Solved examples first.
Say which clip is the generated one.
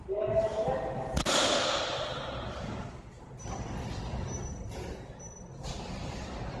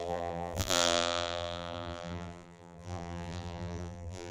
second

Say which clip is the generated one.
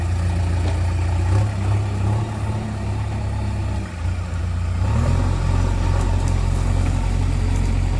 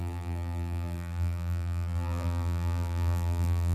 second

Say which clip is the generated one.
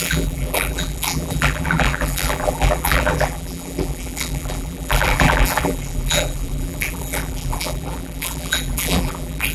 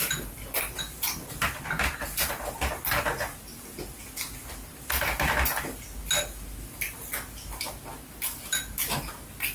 first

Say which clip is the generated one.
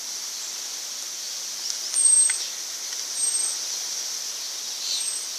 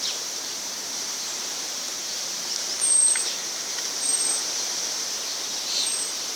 second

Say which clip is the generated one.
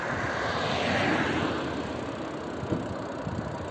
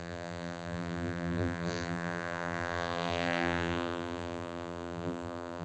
second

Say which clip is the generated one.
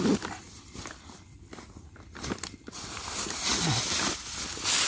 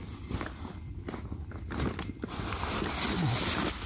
first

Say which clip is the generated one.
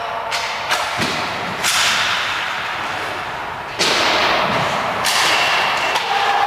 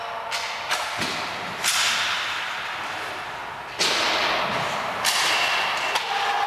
first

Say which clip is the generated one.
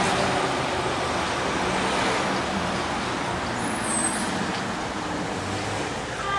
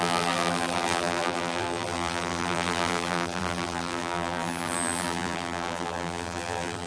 second